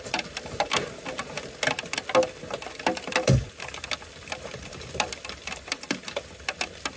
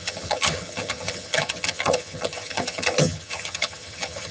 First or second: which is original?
first